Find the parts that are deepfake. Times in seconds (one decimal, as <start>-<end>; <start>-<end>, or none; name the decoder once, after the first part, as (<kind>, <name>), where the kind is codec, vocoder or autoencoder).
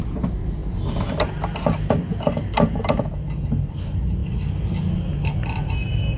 none